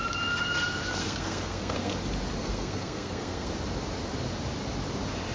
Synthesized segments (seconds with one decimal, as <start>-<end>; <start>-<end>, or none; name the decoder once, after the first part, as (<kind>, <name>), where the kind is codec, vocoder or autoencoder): 1.0-1.9 (codec, SNAC); 2.4-3.5